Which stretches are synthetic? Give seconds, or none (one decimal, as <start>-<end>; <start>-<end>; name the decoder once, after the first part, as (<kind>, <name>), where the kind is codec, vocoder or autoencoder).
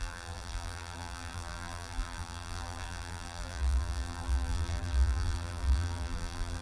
0.0-6.6 (vocoder, BigVGAN v2)